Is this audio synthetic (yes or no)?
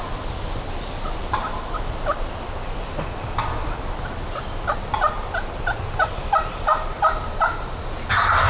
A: no